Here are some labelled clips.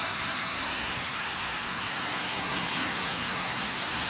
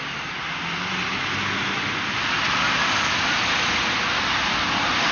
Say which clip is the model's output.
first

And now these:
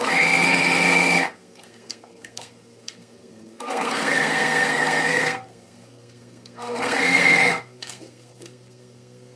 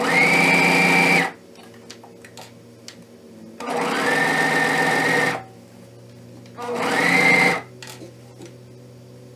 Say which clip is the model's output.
first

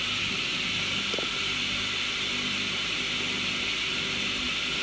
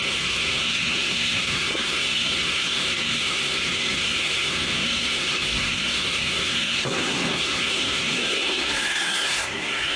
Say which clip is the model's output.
second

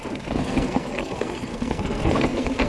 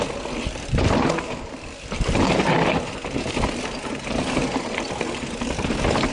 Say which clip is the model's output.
first